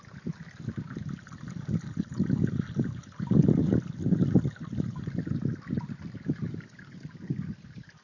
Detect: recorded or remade recorded